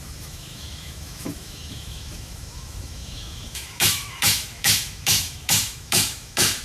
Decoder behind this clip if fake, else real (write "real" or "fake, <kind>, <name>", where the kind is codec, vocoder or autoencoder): fake, autoencoder, DAC-VAE